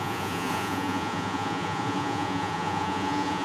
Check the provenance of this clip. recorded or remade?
remade